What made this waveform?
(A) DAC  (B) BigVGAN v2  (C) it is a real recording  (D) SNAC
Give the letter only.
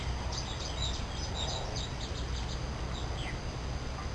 C